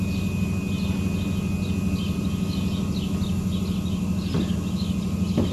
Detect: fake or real real